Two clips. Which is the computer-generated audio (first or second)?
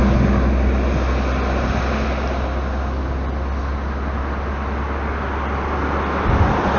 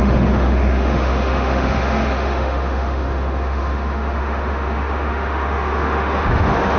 second